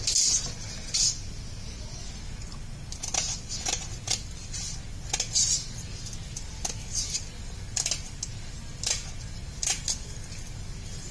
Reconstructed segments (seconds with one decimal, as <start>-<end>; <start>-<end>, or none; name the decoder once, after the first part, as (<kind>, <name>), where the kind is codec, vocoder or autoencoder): none